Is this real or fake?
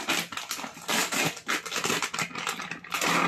real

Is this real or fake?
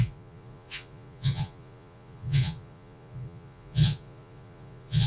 fake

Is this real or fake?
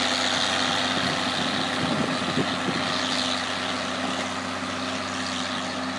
real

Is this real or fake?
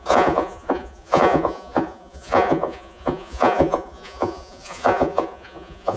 fake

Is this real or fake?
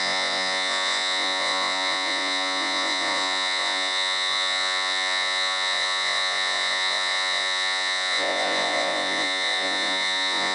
fake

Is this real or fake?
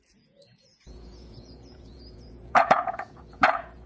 fake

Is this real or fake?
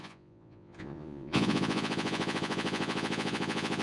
fake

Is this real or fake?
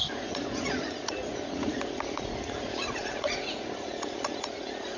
fake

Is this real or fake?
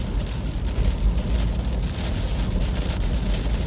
real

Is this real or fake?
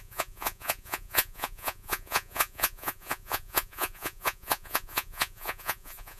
fake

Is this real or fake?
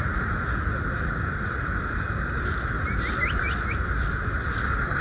real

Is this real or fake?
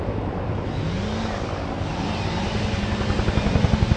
real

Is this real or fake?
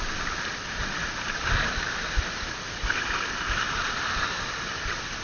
real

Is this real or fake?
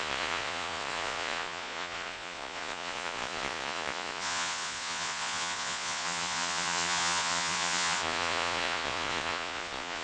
fake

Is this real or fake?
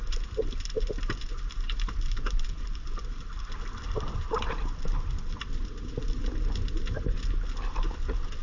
real